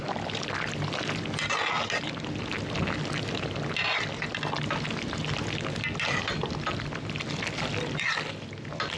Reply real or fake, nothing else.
real